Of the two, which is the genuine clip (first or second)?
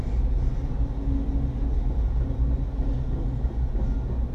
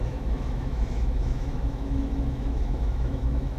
first